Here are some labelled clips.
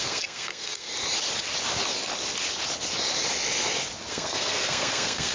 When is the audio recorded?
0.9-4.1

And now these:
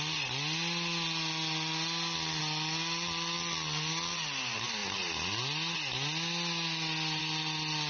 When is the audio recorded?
0.0-7.9

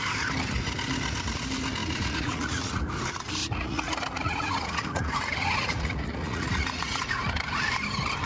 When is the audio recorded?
0.0-1.8; 2.9-3.4; 7.6-8.3

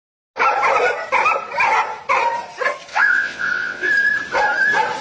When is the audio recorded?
0.0-2.9; 3.9-5.0

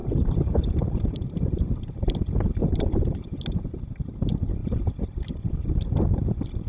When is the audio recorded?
0.0-6.7

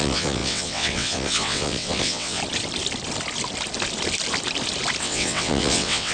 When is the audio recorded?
2.4-5.0

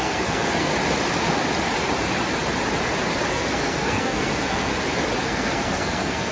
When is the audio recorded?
0.7-3.3; 4.7-5.2

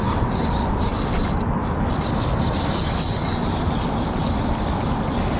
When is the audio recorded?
0.0-5.4